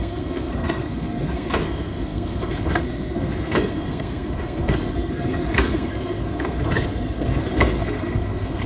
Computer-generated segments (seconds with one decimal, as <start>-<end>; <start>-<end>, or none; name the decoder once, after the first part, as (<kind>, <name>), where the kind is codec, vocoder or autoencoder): 0.0-8.7 (codec, SNAC)